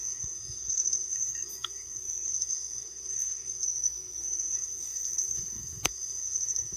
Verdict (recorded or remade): remade